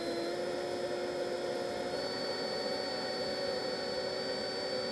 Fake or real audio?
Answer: real